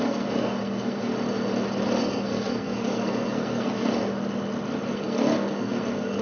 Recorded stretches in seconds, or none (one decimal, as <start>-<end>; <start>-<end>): 1.1-2.0; 3.9-4.9